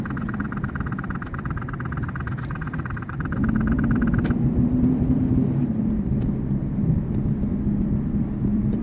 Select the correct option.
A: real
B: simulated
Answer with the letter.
B